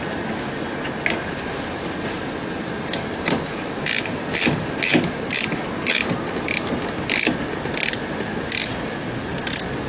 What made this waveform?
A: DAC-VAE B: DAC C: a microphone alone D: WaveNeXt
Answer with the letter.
C